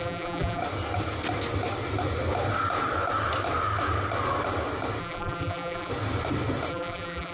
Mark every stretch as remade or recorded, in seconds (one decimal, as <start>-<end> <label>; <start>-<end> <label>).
0.0-0.6 remade; 0.6-5.0 recorded; 5.0-5.9 remade; 5.9-6.7 recorded; 6.7-7.3 remade